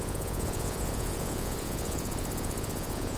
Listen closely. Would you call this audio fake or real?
fake